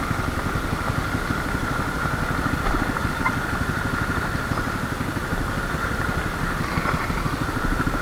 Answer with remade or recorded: recorded